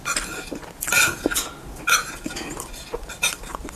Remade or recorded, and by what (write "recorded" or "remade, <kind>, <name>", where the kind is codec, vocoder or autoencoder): recorded